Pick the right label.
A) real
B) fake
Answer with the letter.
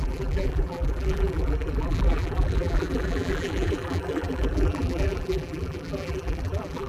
B